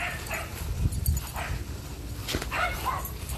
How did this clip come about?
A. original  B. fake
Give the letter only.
A